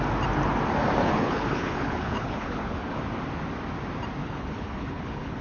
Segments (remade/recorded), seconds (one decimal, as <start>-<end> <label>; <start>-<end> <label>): 0.0-1.0 recorded; 1.0-3.0 remade; 3.0-4.2 recorded; 4.2-5.4 remade